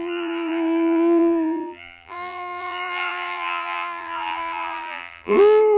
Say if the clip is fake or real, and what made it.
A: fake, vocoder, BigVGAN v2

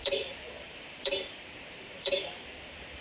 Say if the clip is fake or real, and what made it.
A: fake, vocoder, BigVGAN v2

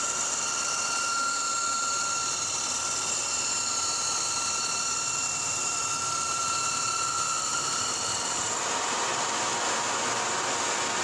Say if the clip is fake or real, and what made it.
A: fake, vocoder, BigVGAN v2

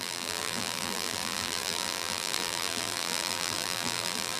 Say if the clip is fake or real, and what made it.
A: fake, vocoder, BigVGAN v2